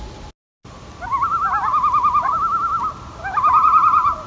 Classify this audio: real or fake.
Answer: real